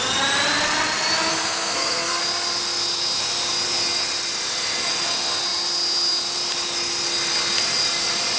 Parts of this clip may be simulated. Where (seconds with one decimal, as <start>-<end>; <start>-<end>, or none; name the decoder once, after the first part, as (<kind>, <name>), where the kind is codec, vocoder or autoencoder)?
1.3-2.2 (codec, SNAC)